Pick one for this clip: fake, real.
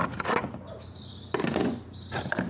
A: fake